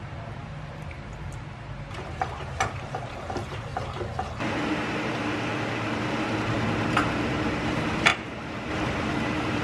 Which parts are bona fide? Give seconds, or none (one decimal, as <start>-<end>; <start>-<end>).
3.7-4.5; 5.5-6.1